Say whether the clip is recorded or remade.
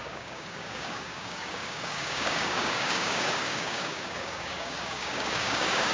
remade